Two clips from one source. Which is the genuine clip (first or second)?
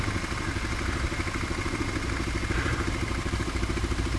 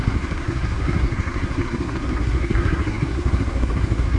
first